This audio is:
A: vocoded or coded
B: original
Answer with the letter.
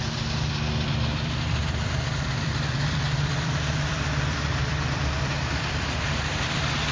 A